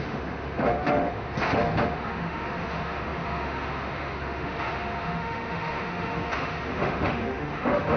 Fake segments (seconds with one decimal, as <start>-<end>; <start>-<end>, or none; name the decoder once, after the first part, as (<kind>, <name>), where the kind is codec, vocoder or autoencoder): 0.0-8.0 (autoencoder, DAC-VAE)